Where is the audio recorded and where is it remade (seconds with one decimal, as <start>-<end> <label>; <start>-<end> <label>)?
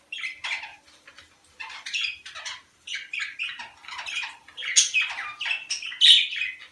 0.0-0.7 recorded; 0.7-3.4 remade; 3.4-6.7 recorded